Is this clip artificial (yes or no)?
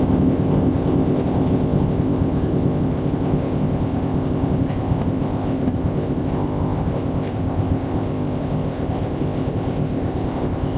yes